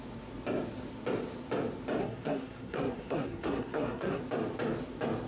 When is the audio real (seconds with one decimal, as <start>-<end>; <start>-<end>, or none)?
0.0-2.0; 4.2-5.3